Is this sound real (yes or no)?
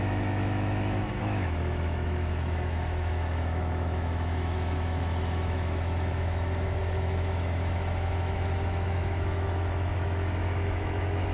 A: no